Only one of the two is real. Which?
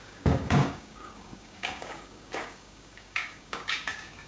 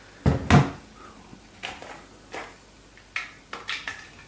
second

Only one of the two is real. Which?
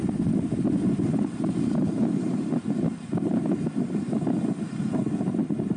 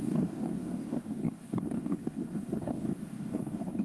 first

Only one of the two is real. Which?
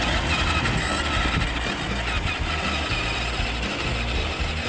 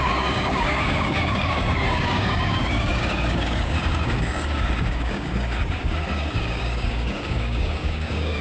first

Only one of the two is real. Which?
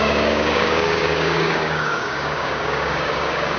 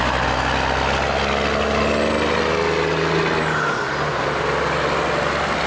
second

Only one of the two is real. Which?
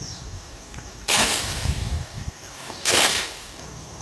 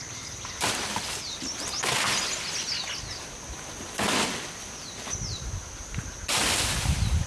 second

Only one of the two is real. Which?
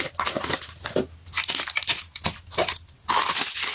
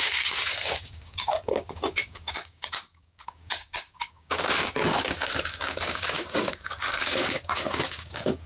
first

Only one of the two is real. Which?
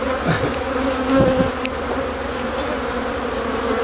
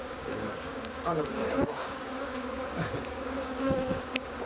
first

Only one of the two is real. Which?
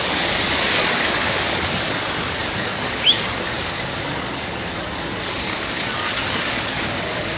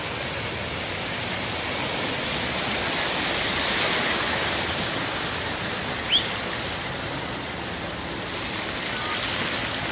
second